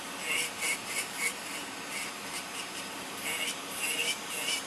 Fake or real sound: fake